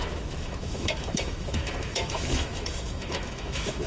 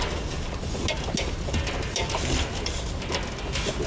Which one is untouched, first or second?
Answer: second